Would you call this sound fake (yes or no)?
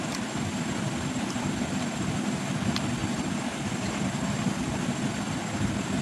no